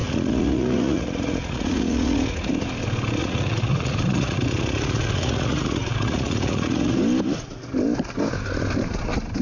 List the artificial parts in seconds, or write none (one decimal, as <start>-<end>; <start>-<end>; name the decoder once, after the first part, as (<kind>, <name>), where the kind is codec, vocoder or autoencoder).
0.0-2.5 (vocoder, Vocos); 3.2-7.0